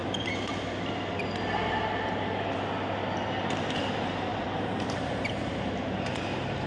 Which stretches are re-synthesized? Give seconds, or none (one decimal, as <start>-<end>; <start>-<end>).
3.8-6.7